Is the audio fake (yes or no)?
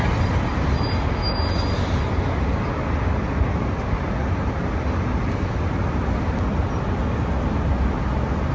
no